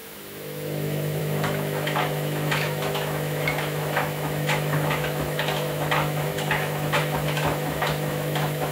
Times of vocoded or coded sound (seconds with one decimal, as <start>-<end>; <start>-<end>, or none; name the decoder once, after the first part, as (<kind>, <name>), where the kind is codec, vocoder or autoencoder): 0.0-8.7 (autoencoder, DAC-VAE)